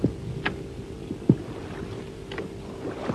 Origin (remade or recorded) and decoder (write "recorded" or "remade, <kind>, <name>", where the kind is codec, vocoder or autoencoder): recorded